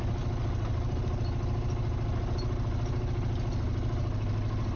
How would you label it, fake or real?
real